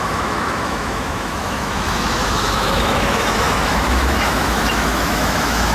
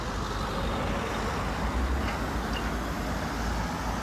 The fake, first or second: first